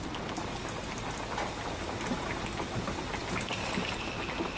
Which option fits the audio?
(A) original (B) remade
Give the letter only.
A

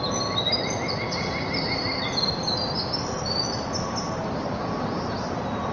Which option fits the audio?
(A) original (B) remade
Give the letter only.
A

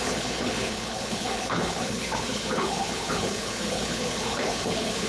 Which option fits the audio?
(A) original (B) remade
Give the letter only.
B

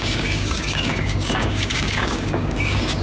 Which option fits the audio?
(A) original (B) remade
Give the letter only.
B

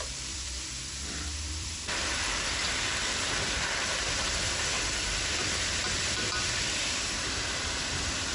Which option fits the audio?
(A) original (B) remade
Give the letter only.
B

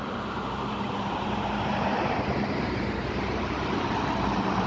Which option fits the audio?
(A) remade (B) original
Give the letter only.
A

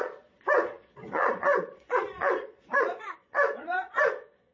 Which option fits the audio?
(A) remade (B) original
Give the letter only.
A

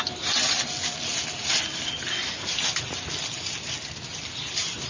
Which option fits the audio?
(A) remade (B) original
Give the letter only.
B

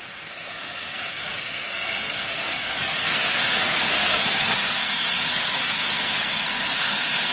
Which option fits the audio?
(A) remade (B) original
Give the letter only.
A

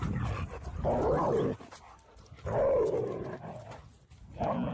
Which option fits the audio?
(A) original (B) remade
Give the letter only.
A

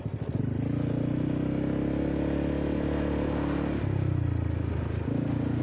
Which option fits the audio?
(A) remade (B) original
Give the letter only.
B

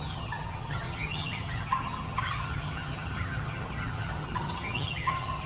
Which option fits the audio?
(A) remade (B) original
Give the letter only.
A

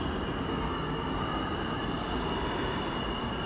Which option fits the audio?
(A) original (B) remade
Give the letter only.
A